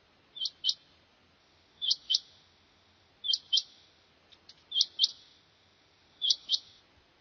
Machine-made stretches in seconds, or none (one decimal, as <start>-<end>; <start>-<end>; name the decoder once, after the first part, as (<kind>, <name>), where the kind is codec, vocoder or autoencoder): 1.4-3.1 (autoencoder, DAC-VAE); 3.5-4.1; 5.1-6.8